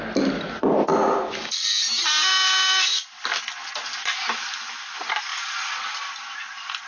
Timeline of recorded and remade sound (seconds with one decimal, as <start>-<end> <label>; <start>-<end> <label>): 0.0-6.9 recorded